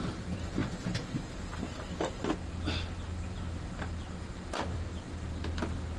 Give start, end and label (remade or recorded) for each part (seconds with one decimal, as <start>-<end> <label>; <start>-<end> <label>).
0.0-0.6 remade; 0.6-4.2 recorded; 4.2-4.9 remade; 4.9-6.0 recorded

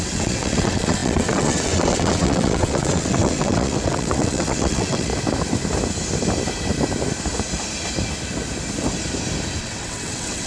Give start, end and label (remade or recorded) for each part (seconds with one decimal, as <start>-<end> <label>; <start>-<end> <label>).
0.0-5.1 remade; 5.1-9.6 recorded; 9.6-10.5 remade